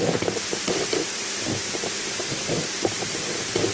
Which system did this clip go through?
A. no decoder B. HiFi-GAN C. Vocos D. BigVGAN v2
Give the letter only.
A